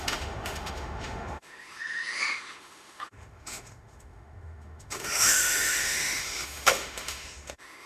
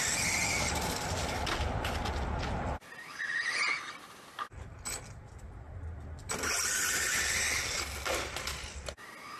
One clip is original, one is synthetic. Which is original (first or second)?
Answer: second